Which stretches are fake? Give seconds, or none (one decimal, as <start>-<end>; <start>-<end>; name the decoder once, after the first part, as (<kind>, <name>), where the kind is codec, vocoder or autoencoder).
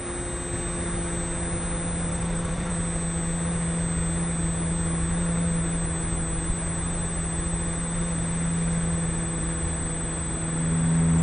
2.1-2.7 (vocoder, BigVGAN v2)